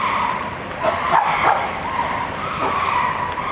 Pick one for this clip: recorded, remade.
recorded